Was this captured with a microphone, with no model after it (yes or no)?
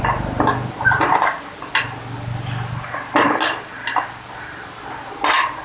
yes